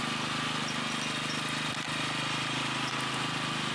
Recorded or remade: recorded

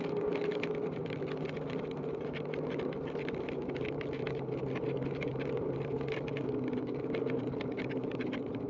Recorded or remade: recorded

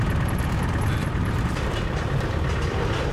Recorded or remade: recorded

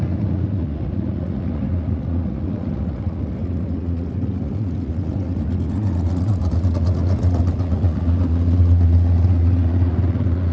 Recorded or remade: remade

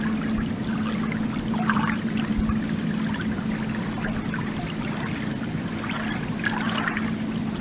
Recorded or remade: recorded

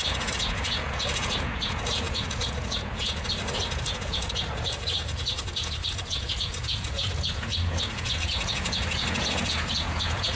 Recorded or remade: remade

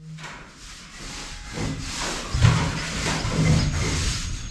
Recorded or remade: recorded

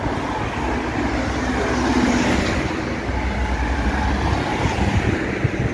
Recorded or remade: recorded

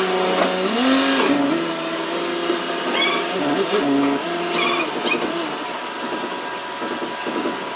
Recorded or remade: recorded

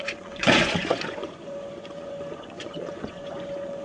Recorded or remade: remade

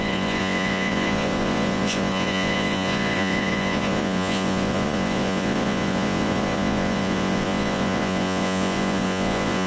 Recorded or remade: remade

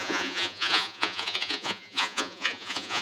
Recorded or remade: remade